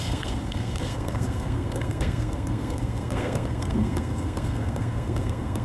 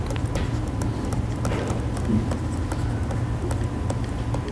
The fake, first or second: first